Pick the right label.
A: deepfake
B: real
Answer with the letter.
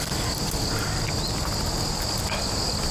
B